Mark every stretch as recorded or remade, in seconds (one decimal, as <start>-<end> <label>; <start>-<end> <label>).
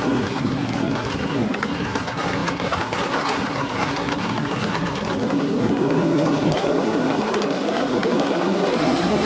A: 0.0-9.3 remade